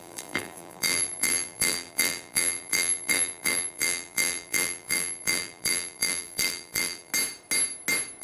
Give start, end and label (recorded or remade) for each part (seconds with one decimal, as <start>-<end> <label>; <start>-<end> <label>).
0.0-7.1 remade; 7.1-8.2 recorded